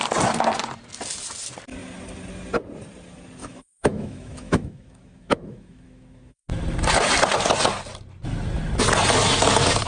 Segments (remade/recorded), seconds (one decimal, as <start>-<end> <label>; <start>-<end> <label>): 0.0-3.4 recorded; 3.4-6.5 remade; 6.5-9.9 recorded